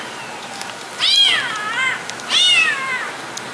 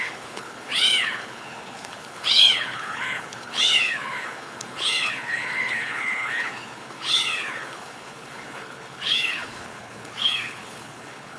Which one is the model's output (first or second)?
second